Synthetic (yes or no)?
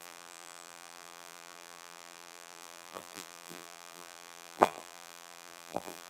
yes